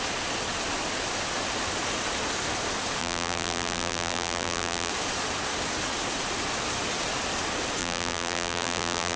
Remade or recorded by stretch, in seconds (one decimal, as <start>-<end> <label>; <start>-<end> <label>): 0.0-3.0 recorded; 3.0-4.9 remade; 4.9-7.8 recorded; 7.8-9.2 remade